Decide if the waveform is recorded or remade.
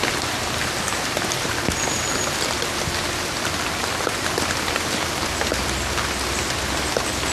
recorded